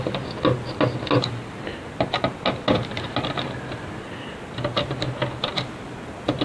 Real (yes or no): yes